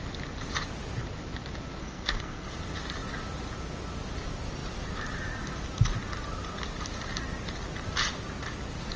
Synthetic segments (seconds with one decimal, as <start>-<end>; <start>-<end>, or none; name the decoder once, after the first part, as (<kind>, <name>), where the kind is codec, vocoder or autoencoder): 1.8-2.6 (codec, SNAC)